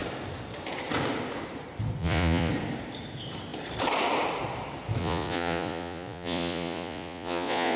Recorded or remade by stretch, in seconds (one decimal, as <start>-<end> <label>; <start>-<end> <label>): 0.0-2.0 recorded; 2.0-2.5 remade; 2.5-5.0 recorded; 5.0-7.8 remade